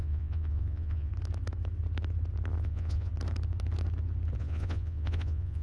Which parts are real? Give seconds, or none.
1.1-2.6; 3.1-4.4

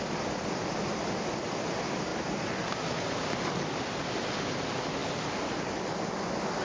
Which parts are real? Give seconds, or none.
0.0-6.6